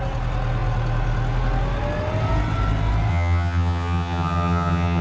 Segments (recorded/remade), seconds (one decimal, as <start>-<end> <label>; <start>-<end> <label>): 0.0-3.1 recorded; 3.1-5.0 remade